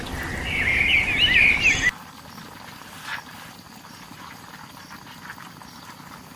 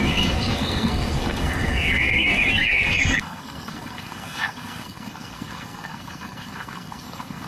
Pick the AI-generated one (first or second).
second